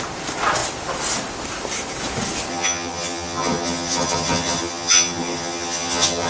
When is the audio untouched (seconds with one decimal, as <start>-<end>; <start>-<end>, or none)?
0.0-2.5